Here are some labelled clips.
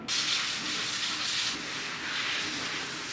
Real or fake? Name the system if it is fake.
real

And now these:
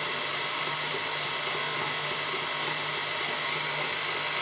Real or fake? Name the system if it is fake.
real